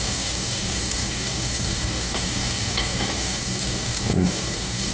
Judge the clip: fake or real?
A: fake